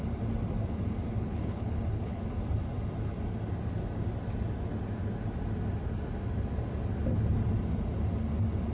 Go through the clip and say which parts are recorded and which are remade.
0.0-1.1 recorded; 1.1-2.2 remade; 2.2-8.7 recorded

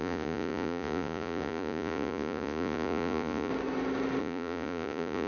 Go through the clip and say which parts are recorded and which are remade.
0.0-3.5 remade; 3.5-4.2 recorded; 4.2-5.3 remade

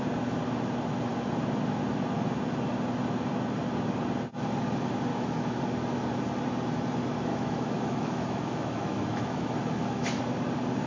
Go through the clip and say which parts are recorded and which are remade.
0.0-5.1 recorded; 5.1-5.6 remade; 5.6-7.3 recorded; 7.3-10.2 remade; 10.2-10.9 recorded

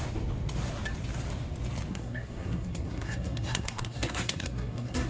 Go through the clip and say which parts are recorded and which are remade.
0.0-1.9 recorded; 1.9-5.1 remade

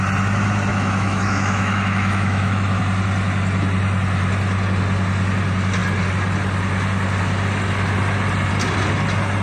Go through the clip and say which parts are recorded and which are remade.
0.0-0.7 recorded; 0.7-2.8 remade; 2.8-9.4 recorded